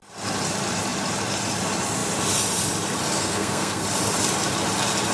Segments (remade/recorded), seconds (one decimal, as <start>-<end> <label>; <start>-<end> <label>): 0.0-3.2 recorded; 3.2-3.8 remade; 3.8-5.1 recorded